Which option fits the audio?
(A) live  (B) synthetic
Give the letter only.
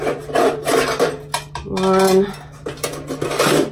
A